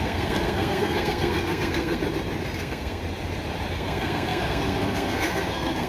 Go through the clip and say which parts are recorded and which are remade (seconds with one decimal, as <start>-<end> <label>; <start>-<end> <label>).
0.0-2.0 remade; 2.0-2.6 recorded; 2.6-3.0 remade; 3.0-3.7 recorded; 3.7-5.9 remade